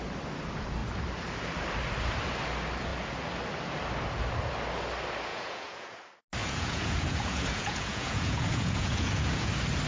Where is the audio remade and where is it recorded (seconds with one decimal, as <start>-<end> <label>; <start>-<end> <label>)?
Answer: 0.0-5.3 recorded; 5.3-6.0 remade; 6.0-6.4 recorded; 6.4-9.5 remade; 9.5-9.9 recorded